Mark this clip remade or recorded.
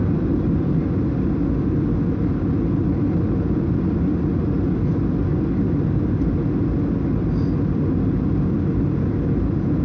recorded